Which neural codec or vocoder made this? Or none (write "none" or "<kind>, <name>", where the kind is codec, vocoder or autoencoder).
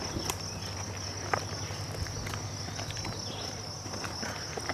none